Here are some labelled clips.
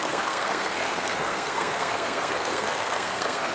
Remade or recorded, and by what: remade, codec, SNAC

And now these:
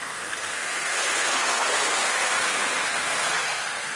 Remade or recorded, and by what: remade, codec, SNAC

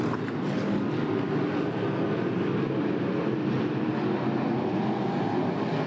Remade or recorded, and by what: recorded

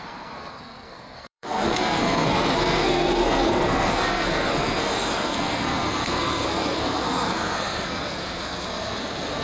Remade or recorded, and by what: remade, codec, SNAC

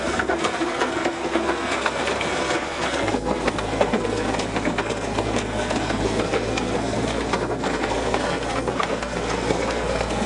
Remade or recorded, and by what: remade, codec, SNAC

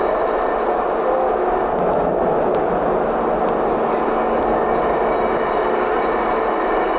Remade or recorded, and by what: recorded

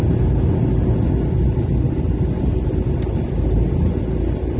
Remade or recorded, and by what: recorded